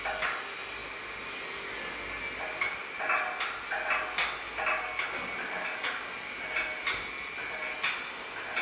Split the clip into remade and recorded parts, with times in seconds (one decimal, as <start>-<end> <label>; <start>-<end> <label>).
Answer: 0.0-8.6 recorded